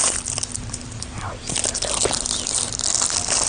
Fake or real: fake